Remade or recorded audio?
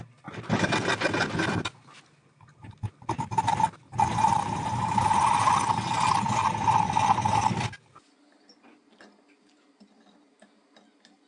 recorded